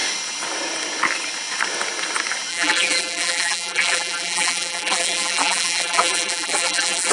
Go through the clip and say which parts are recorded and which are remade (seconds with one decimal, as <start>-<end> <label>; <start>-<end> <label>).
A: 0.0-2.5 recorded; 2.5-7.1 remade